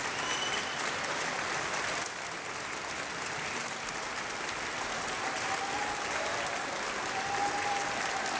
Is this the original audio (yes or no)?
yes